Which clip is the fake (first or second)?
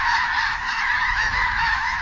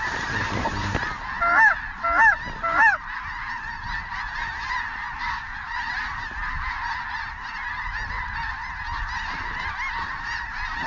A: first